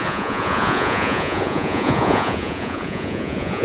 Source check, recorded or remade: remade